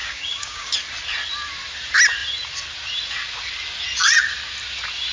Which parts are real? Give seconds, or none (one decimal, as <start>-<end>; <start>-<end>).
0.7-5.1